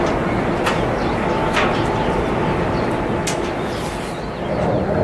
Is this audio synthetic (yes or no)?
no